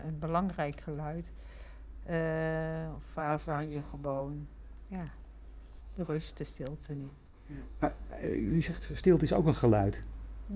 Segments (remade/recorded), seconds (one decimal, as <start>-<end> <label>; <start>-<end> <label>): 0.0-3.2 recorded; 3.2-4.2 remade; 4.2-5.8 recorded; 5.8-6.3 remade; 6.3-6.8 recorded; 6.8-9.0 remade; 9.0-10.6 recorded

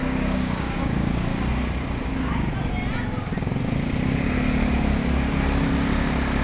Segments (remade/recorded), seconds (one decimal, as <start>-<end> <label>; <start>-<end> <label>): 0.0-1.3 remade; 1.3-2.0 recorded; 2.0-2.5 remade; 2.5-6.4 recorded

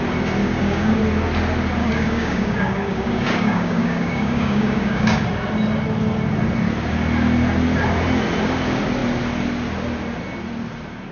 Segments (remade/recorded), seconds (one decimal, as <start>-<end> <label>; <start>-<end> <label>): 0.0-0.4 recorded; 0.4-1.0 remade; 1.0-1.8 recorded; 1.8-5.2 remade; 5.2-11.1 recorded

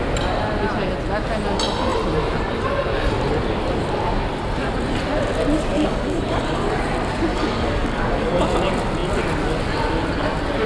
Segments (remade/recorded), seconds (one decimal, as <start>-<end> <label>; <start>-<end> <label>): 0.0-5.7 recorded; 5.7-6.8 remade; 6.8-7.3 recorded; 7.3-8.4 remade; 8.4-10.7 recorded

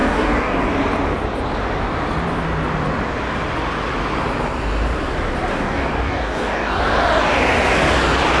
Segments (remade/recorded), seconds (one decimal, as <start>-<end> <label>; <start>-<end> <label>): 0.0-0.6 remade; 0.6-5.5 recorded; 5.5-6.8 remade; 6.8-8.4 recorded

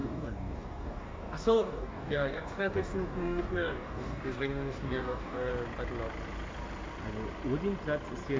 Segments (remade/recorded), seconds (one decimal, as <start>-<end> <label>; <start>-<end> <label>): 0.0-5.5 remade; 5.5-8.4 recorded

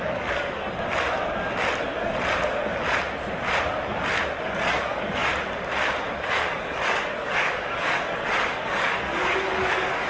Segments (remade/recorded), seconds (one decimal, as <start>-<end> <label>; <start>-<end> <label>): 0.0-0.6 remade; 0.6-4.4 recorded; 4.4-5.3 remade; 5.3-6.1 recorded; 6.1-10.1 remade